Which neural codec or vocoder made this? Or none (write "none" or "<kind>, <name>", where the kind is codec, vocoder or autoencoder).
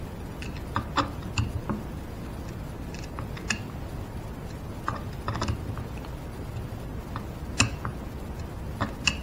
none